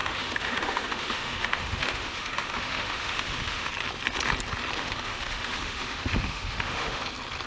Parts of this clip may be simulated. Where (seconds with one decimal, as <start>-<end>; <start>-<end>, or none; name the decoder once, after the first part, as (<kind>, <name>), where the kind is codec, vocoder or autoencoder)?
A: 0.0-3.7 (autoencoder, DAC-VAE); 4.8-7.0